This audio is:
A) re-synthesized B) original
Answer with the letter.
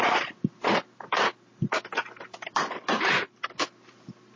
A